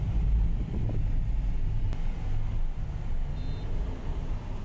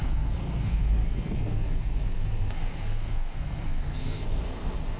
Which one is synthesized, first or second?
second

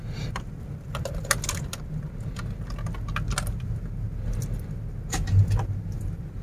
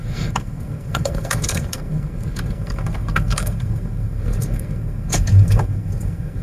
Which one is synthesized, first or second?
second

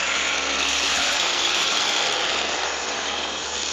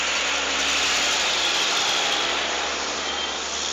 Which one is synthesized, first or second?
first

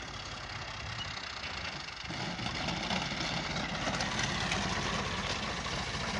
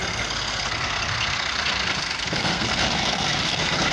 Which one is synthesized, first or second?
second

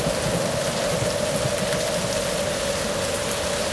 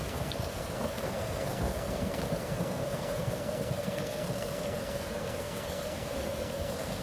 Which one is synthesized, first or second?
second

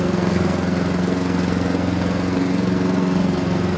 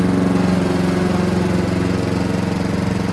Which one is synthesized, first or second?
first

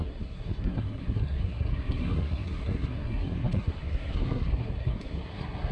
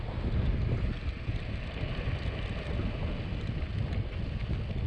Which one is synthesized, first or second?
first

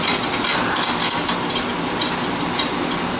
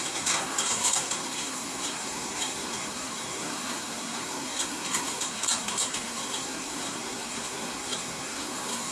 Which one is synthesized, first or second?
second